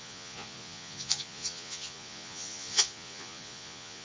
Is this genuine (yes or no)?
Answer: no